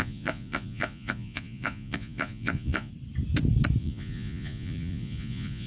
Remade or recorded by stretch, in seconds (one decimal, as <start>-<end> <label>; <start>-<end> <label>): 0.0-2.9 remade; 2.9-3.8 recorded; 3.8-5.7 remade